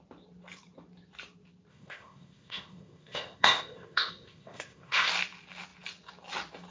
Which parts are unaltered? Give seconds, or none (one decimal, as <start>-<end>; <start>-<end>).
0.0-1.7; 5.1-6.7